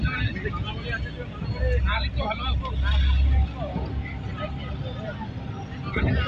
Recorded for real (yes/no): yes